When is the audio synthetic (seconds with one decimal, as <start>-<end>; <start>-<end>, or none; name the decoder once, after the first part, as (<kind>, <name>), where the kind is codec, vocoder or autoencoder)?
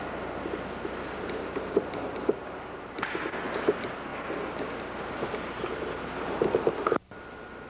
none